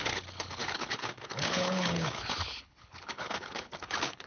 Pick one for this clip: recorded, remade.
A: remade